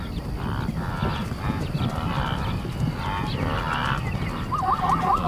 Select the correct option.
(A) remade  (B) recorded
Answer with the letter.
B